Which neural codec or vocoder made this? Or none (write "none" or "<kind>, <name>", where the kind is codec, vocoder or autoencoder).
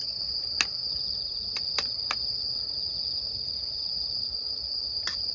none